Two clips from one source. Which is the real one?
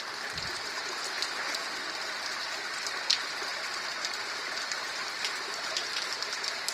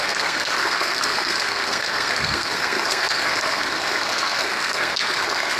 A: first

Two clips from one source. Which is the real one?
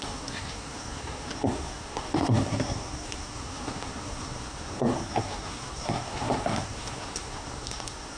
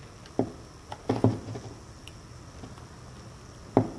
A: second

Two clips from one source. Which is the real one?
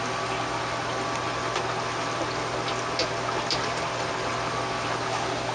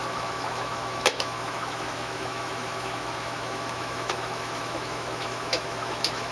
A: first